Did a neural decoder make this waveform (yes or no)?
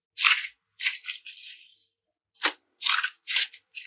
no